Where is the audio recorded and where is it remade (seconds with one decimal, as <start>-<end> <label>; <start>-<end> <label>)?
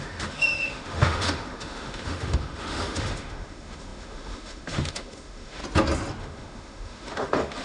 0.0-5.6 remade; 5.6-6.2 recorded; 6.2-7.6 remade